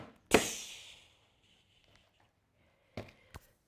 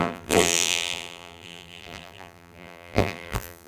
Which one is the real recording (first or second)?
first